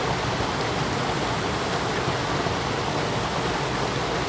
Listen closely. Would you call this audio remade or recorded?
recorded